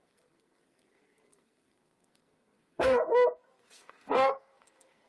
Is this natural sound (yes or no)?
no